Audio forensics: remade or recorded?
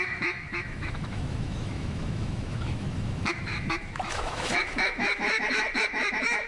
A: remade